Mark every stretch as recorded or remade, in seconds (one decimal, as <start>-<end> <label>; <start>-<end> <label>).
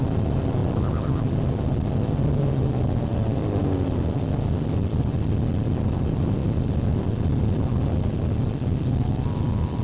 0.0-9.8 recorded